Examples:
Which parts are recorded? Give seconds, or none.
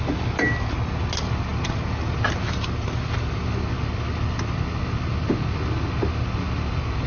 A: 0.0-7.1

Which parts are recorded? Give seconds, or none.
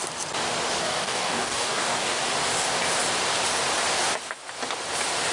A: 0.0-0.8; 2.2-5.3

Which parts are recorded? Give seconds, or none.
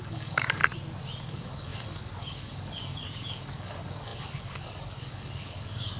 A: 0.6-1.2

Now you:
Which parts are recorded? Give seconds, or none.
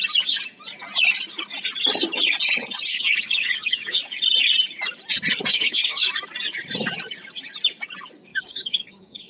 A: 0.0-2.9; 4.0-5.5; 6.1-8.3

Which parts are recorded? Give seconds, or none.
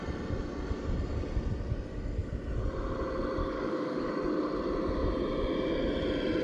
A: 0.0-3.4; 4.1-6.4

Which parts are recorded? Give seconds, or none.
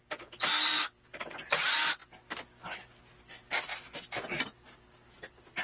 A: 0.0-5.6